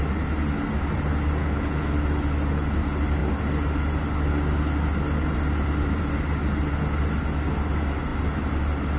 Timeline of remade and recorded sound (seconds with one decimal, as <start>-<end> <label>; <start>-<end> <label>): 0.0-1.4 recorded; 1.4-1.9 remade; 1.9-9.0 recorded

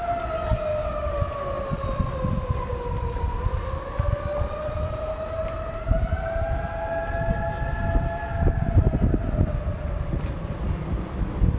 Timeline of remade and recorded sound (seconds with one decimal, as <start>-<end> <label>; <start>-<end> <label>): 0.0-0.7 recorded; 0.7-1.2 remade; 1.2-11.6 recorded

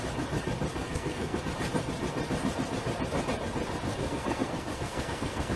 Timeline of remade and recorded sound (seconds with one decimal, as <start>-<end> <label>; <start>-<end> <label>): 0.0-0.8 recorded; 0.8-1.4 remade; 1.4-3.9 recorded; 3.9-5.6 remade

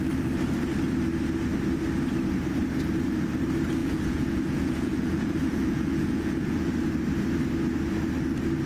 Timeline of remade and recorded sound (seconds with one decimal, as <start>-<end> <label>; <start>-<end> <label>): 0.0-3.8 recorded; 3.8-6.7 remade; 6.7-8.7 recorded

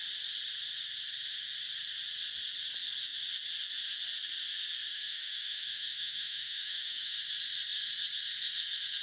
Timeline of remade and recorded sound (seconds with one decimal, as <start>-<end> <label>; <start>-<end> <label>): 0.0-4.9 recorded; 4.9-7.2 remade; 7.2-9.0 recorded